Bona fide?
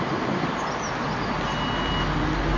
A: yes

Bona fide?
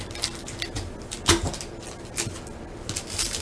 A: yes